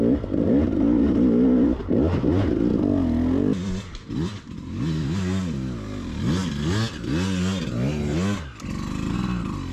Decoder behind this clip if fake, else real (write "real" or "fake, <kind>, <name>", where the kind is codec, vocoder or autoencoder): real